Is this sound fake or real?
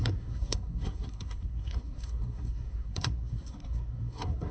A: fake